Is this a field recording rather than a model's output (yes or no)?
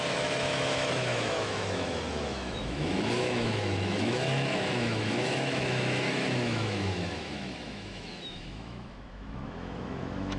no